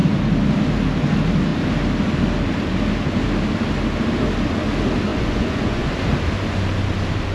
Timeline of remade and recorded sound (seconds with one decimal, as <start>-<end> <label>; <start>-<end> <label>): 0.0-5.1 recorded; 5.1-5.9 remade; 5.9-7.3 recorded